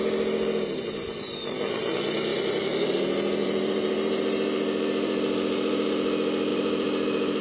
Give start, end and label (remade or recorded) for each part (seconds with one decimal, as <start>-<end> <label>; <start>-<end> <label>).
0.0-2.3 recorded; 2.3-2.9 remade; 2.9-3.4 recorded; 3.4-5.9 remade; 5.9-6.5 recorded; 6.5-7.4 remade